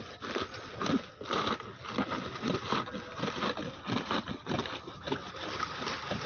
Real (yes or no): yes